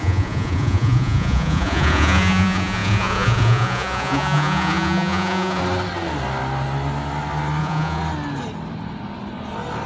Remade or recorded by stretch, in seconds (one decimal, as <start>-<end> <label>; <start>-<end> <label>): 0.0-5.6 remade; 5.6-7.6 recorded; 7.6-8.0 remade; 8.0-9.9 recorded

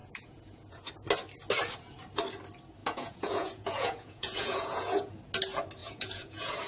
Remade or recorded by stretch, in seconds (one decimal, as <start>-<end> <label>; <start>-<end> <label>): 0.0-0.9 remade; 0.9-2.8 recorded; 2.8-5.1 remade; 5.1-5.8 recorded; 5.8-6.7 remade

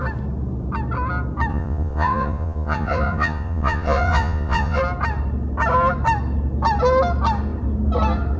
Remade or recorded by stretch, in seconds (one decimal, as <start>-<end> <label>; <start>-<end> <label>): 0.0-1.5 recorded; 1.5-4.8 remade; 4.8-8.4 recorded

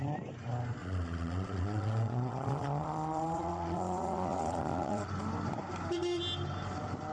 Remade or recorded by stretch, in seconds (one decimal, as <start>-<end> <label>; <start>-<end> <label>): 0.0-0.8 recorded; 0.8-5.1 remade; 5.1-7.1 recorded

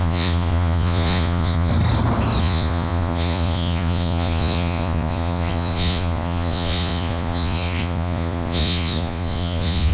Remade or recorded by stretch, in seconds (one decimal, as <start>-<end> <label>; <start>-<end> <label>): 0.0-1.7 remade; 1.7-2.4 recorded; 2.4-9.9 remade

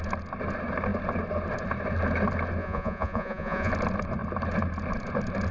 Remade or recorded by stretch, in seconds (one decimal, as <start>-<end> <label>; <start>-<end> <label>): 0.0-2.6 recorded; 2.6-3.7 remade; 3.7-5.5 recorded

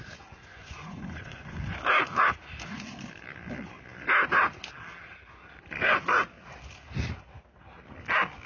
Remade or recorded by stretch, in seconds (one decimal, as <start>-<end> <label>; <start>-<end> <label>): 0.0-0.5 recorded; 0.5-1.8 remade; 1.8-8.5 recorded